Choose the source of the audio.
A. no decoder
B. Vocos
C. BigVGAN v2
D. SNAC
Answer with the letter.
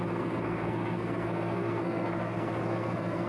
D